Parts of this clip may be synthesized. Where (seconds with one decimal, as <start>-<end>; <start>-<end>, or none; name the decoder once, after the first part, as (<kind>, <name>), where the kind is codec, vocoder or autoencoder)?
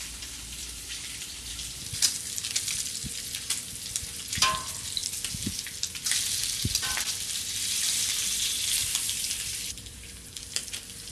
0.0-5.0 (vocoder, BigVGAN v2); 6.1-11.1